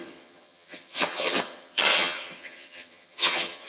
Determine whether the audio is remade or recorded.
remade